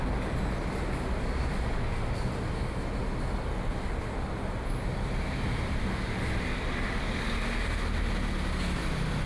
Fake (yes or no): no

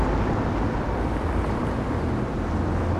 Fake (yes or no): no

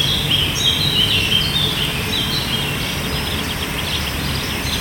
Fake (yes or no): no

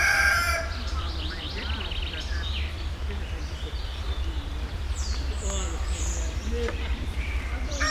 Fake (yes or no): yes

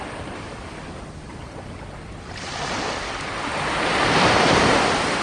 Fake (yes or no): no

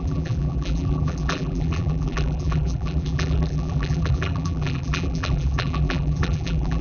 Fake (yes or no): yes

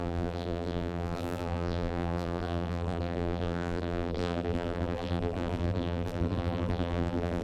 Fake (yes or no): yes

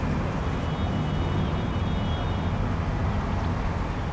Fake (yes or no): no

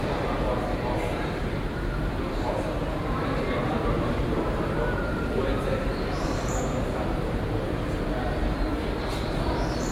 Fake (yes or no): yes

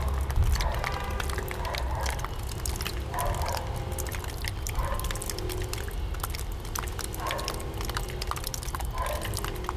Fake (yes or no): no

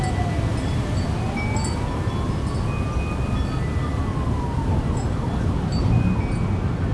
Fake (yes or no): no